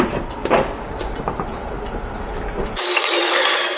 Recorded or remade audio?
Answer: remade